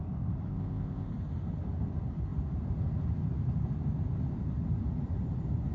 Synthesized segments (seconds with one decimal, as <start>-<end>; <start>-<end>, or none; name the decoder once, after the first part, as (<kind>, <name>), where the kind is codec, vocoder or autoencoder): 0.5-1.1 (codec, ZipCodec)